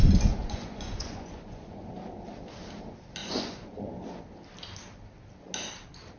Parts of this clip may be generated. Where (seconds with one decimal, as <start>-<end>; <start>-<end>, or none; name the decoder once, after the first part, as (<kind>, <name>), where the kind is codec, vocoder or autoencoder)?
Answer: 0.4-1.9 (vocoder, Vocos); 3.2-3.9